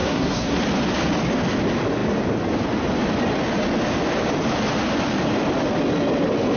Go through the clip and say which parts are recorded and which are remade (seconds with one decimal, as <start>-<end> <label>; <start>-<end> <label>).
0.0-0.6 remade; 0.6-6.6 recorded